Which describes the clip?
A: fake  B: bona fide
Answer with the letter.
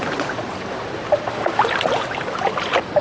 B